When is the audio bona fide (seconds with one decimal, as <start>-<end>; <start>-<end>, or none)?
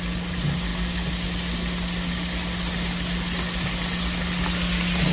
0.0-5.1